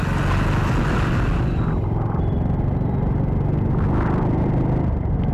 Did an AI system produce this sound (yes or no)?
no